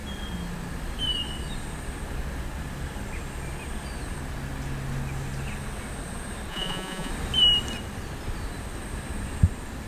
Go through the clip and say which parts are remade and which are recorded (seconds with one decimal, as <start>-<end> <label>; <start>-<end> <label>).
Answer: 0.0-6.5 recorded; 6.5-7.1 remade; 7.1-9.9 recorded